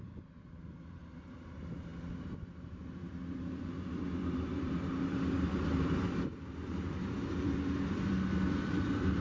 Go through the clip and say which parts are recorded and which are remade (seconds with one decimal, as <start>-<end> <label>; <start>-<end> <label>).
0.0-1.9 remade; 1.9-2.8 recorded; 2.8-9.2 remade